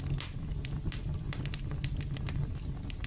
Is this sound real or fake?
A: real